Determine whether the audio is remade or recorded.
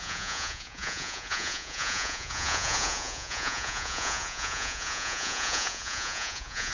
remade